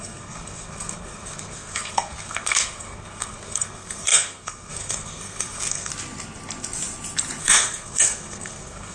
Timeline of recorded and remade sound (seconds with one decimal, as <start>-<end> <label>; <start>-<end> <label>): 0.0-5.9 remade; 5.9-7.4 recorded; 7.4-8.9 remade